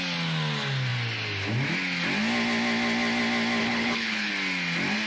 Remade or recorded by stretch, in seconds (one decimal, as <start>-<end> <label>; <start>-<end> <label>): 0.0-3.6 recorded; 3.6-4.3 remade; 4.3-5.1 recorded